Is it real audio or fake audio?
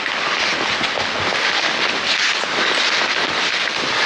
real